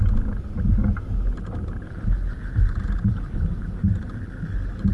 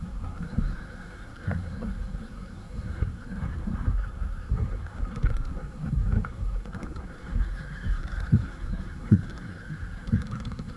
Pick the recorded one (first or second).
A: first